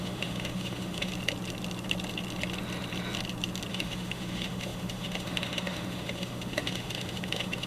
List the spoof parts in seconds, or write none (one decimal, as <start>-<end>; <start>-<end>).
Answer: 0.0-1.1; 3.7-7.7